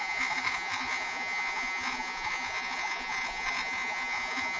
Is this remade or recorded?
remade